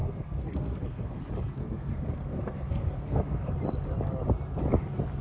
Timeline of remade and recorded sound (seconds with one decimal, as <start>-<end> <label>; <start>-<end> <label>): 0.0-1.2 remade; 1.2-1.6 recorded; 1.6-3.5 remade; 3.5-5.2 recorded